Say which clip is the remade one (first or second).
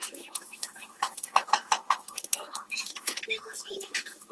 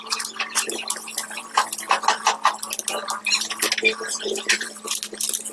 first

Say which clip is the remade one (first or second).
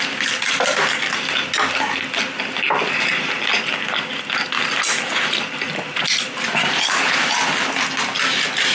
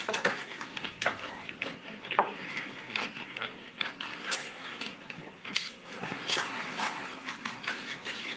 second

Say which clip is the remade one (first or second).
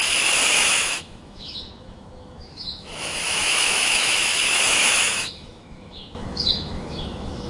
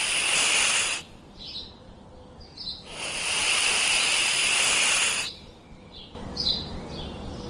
first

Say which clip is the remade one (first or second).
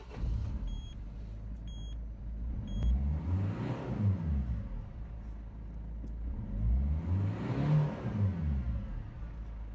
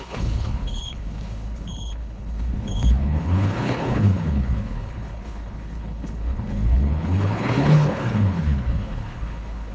second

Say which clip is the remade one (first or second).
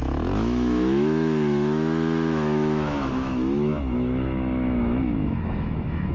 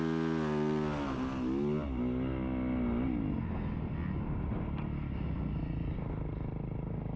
first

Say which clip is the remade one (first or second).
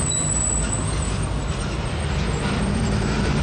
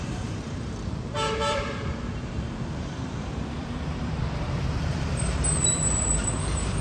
second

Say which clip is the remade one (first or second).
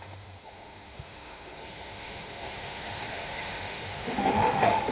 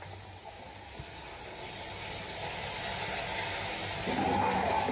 first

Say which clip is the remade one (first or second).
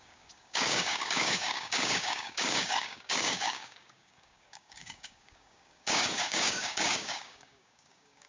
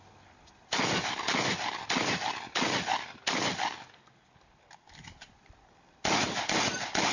first